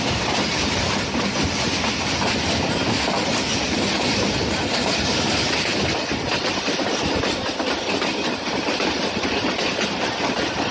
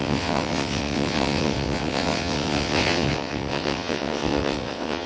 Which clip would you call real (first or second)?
first